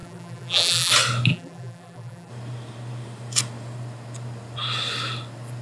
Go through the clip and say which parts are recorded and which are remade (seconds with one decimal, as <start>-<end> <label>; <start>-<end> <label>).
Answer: 0.0-0.9 remade; 0.9-1.3 recorded; 1.3-2.3 remade; 2.3-5.6 recorded